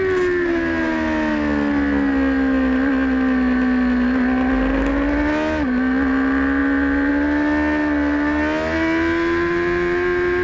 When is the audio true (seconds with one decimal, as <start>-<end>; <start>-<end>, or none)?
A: 0.0-10.4